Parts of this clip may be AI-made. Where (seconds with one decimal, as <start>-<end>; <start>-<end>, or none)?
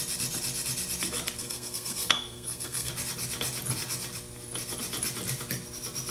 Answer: 1.4-2.9